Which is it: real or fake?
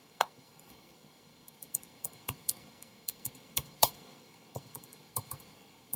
fake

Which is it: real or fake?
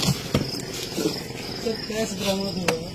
real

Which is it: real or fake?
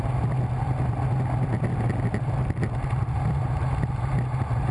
real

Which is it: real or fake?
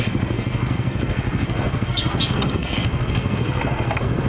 fake